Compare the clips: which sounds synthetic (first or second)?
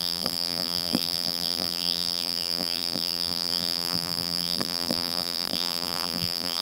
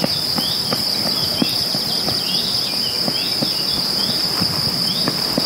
first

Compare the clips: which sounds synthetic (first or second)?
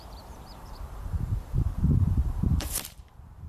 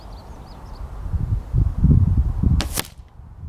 first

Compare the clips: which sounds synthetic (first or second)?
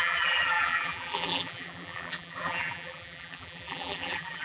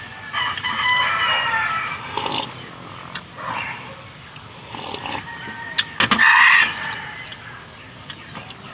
first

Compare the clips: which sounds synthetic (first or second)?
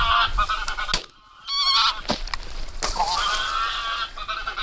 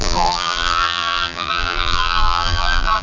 second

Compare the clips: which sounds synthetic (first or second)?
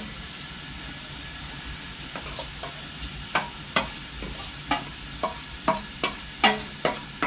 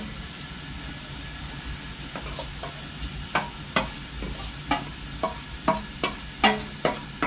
first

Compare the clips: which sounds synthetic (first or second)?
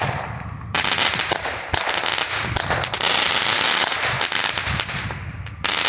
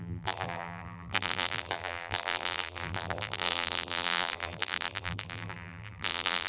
second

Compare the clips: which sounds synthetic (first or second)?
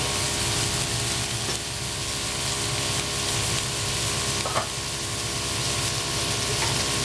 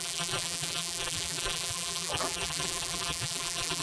second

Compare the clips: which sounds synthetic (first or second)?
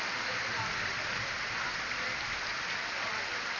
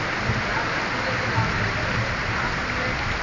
first